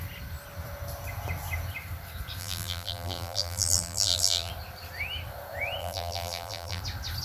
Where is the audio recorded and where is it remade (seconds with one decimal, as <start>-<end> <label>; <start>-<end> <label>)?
0.0-2.4 recorded; 2.4-4.5 remade; 4.5-5.8 recorded; 5.8-6.8 remade; 6.8-7.2 recorded